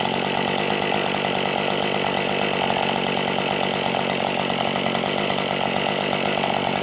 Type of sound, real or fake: real